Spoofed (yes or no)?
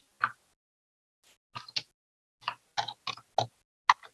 no